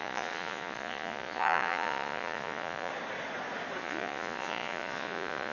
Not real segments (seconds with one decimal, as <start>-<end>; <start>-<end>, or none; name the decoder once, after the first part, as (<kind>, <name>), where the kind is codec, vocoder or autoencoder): 0.0-2.9 (vocoder, Vocos); 3.8-5.5